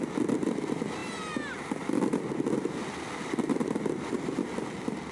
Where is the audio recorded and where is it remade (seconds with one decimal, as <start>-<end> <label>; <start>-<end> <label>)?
0.0-5.1 recorded